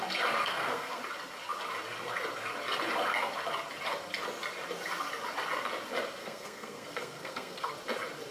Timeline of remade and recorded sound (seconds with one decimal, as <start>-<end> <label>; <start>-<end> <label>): 0.0-0.4 recorded; 0.4-1.0 remade; 1.0-6.2 recorded; 6.2-7.7 remade; 7.7-8.3 recorded

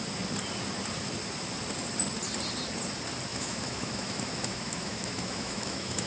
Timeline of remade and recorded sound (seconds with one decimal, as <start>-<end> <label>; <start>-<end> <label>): 0.0-3.3 recorded; 3.3-6.1 remade

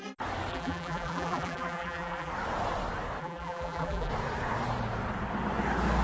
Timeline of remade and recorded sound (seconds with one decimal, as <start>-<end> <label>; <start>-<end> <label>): 0.0-0.5 recorded; 0.5-2.3 remade; 2.3-3.2 recorded; 3.2-4.1 remade; 4.1-6.0 recorded